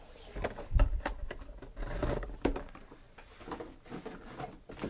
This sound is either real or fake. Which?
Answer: real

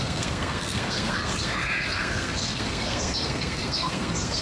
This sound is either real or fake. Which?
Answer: fake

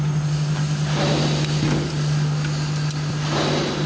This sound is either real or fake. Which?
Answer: real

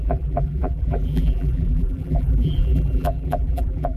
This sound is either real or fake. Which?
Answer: fake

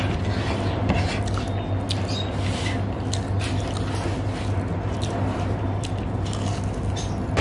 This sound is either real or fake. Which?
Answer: real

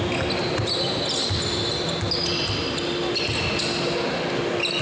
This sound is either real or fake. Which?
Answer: real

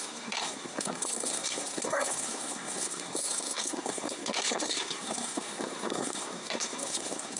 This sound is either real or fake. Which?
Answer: fake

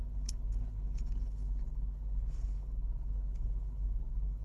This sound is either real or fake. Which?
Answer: fake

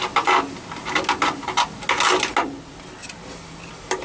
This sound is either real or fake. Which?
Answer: real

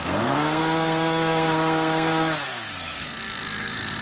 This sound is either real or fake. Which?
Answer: fake